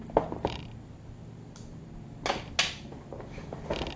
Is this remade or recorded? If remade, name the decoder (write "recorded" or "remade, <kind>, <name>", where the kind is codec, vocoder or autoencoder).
recorded